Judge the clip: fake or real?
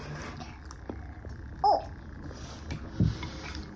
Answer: real